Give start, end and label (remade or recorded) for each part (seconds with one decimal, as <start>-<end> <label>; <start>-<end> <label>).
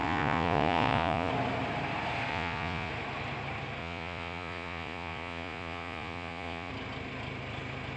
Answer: 0.0-1.3 remade; 1.3-2.3 recorded; 2.3-2.9 remade; 2.9-3.8 recorded; 3.8-6.7 remade; 6.7-8.0 recorded